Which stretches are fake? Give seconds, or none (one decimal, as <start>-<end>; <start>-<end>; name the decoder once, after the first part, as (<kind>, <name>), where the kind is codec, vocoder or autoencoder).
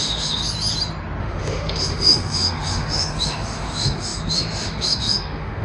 0.0-0.4 (autoencoder, DAC-VAE); 1.2-5.6